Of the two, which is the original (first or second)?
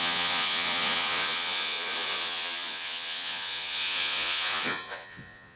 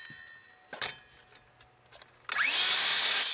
second